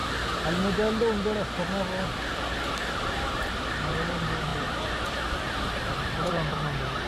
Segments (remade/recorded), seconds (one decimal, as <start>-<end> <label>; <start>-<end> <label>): 0.0-3.8 recorded; 3.8-4.5 remade; 4.5-5.1 recorded; 5.1-7.1 remade